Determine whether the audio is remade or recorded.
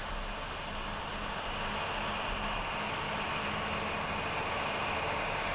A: recorded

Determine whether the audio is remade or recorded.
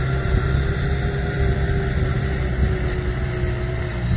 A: recorded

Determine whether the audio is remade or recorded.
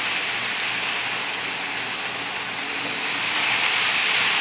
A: recorded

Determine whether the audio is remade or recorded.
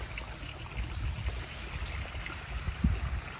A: recorded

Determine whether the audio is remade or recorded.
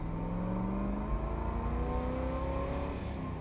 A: recorded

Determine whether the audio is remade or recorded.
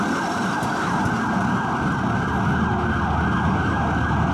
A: recorded